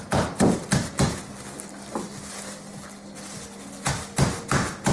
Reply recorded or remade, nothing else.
recorded